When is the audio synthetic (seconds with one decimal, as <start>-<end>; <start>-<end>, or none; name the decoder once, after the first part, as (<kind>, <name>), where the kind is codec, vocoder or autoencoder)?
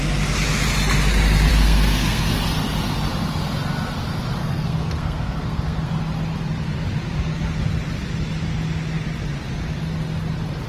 1.5-2.3 (codec, SNAC); 4.4-5.9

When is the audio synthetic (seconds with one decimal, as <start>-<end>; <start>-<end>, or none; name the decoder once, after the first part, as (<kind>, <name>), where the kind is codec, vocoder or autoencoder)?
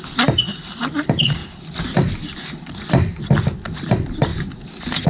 4.3-5.1 (vocoder, BigVGAN v2)